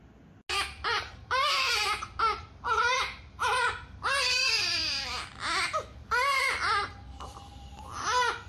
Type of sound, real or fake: real